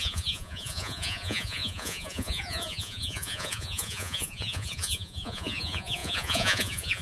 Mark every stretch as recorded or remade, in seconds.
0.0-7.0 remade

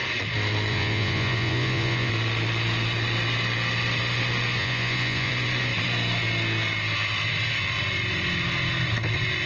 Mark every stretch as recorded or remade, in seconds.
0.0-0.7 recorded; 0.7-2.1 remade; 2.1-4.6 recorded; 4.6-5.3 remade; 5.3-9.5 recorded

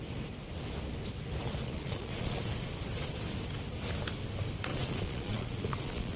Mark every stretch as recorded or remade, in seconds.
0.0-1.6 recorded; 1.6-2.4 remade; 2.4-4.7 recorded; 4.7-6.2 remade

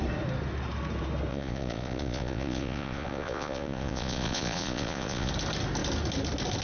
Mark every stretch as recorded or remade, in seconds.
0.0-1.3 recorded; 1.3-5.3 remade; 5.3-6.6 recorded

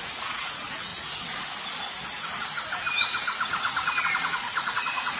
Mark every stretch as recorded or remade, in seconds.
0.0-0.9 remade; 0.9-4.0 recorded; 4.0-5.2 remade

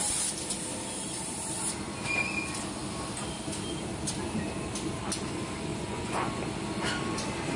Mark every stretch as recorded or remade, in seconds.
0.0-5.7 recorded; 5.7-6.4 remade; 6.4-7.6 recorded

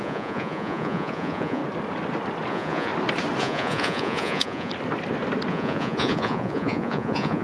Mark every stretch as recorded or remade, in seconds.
0.0-1.6 remade; 1.6-2.5 recorded; 2.5-2.9 remade; 2.9-3.4 recorded; 3.4-4.7 remade; 4.7-5.5 recorded; 5.5-7.4 remade

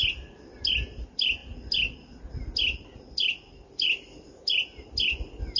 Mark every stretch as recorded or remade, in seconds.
0.0-5.6 recorded